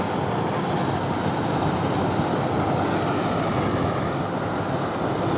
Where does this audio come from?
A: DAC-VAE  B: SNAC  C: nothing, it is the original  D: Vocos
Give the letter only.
C